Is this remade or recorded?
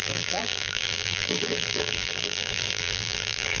remade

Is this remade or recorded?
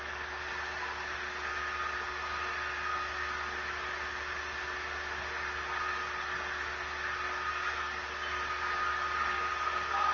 recorded